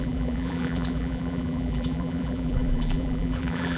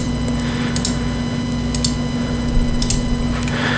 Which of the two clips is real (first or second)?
second